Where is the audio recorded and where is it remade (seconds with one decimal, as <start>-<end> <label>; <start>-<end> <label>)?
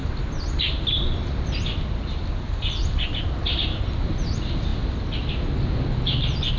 0.0-6.6 recorded